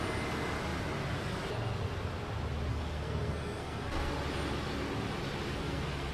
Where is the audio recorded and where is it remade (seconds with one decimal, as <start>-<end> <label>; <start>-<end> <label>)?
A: 0.0-2.7 recorded; 2.7-4.1 remade; 4.1-5.5 recorded; 5.5-6.1 remade